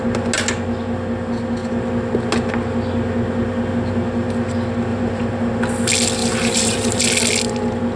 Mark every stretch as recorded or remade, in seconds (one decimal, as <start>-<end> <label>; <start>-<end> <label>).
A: 0.0-4.9 recorded; 4.9-5.6 remade; 5.6-6.2 recorded; 6.2-7.0 remade; 7.0-8.0 recorded

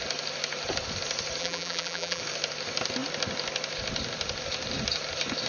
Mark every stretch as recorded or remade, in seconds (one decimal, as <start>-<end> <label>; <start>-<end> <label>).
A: 0.0-1.4 recorded; 1.4-2.2 remade; 2.2-5.5 recorded

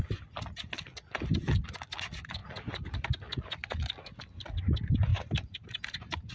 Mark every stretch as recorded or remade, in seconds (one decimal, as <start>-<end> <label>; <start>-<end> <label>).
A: 0.0-5.1 recorded; 5.1-6.3 remade

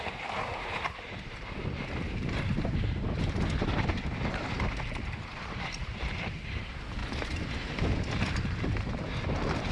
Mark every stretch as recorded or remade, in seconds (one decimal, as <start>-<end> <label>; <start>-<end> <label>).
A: 0.0-7.0 remade; 7.0-9.7 recorded

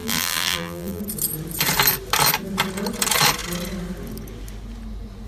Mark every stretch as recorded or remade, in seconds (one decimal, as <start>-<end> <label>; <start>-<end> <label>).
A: 0.0-1.0 remade; 1.0-5.3 recorded